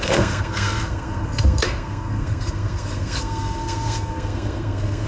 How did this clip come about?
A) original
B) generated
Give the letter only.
B